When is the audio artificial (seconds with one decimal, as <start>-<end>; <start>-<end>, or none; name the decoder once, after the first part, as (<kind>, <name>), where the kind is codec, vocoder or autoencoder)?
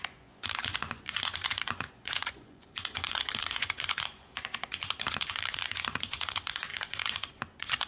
0.0-7.9 (vocoder, Vocos)